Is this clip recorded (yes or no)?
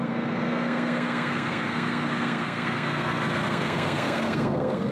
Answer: no